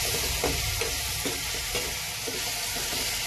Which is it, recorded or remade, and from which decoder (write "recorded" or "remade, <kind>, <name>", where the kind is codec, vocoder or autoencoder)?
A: recorded